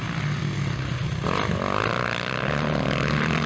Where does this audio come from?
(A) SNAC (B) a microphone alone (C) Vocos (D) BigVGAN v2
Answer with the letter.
B